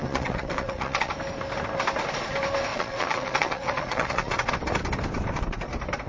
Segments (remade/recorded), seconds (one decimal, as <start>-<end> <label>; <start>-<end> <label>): 0.0-1.1 remade; 1.1-2.7 recorded; 2.7-4.5 remade; 4.5-6.1 recorded